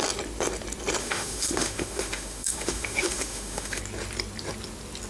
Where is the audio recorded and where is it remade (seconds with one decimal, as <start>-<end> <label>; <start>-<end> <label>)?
0.0-1.0 recorded; 1.0-3.8 remade; 3.8-5.1 recorded